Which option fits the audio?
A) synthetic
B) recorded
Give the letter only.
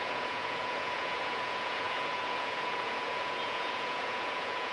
A